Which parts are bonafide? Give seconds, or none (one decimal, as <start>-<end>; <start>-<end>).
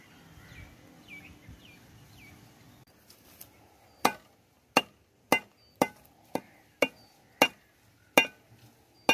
0.0-9.1